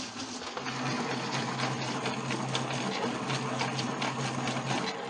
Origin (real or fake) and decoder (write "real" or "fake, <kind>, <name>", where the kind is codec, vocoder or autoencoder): real